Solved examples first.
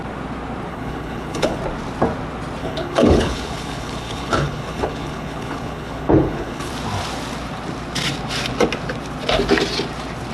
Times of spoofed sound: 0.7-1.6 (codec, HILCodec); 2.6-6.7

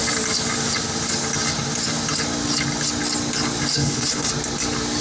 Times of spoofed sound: 3.7-4.3 (codec, HILCodec)

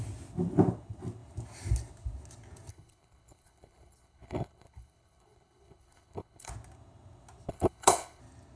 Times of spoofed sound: 2.7-6.5 (codec, HILCodec); 7.5-8.2

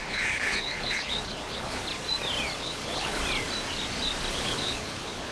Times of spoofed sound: 0.0-1.8 (codec, HILCodec); 2.6-3.2; 4.3-5.3

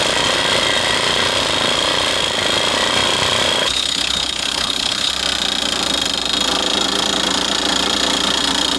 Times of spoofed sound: 3.6-5.1 (codec, HILCodec)

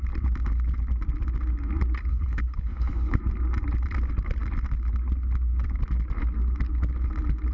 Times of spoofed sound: 2.1-3.2 (codec, HILCodec)